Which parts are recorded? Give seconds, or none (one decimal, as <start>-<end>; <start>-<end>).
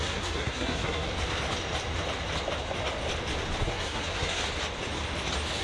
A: 1.1-3.6; 4.4-5.6